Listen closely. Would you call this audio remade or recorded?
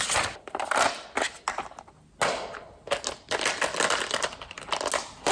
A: recorded